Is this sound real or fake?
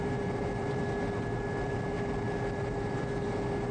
real